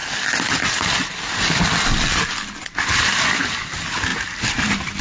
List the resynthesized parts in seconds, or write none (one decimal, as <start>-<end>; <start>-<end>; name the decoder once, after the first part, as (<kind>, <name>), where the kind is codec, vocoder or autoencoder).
none

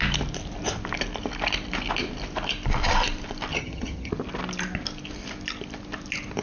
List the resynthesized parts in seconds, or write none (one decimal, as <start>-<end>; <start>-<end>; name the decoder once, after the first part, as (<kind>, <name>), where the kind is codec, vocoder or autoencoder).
3.5-4.1 (vocoder, HiFi-GAN)

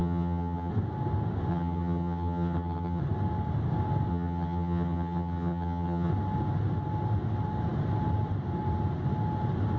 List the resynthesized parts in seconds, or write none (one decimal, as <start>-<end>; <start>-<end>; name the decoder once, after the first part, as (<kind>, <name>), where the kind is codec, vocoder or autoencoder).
0.0-0.7 (vocoder, HiFi-GAN); 1.5-3.0; 4.1-6.1

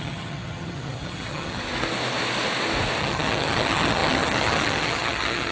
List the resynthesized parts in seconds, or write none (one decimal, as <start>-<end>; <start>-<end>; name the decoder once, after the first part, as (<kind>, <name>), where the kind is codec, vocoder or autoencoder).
0.0-1.6 (vocoder, HiFi-GAN); 3.0-5.5